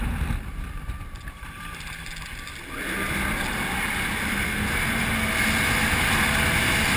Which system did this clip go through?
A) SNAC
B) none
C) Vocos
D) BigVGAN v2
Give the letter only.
B